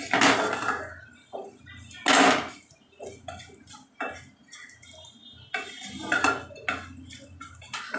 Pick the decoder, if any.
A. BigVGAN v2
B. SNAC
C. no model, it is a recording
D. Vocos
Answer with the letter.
C